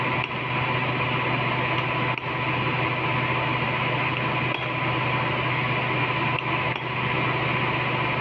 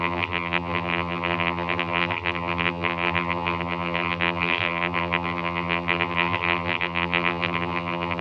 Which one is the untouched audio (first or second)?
first